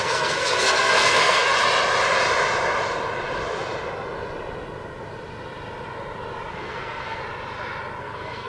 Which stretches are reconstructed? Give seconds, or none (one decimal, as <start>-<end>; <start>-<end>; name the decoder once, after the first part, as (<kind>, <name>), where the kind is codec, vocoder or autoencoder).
0.0-1.5 (codec, SNAC); 6.5-7.2; 8.0-8.5